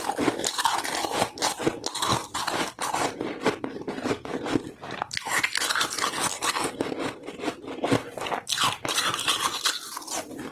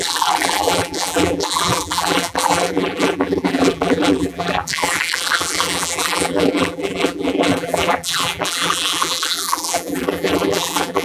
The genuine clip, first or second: first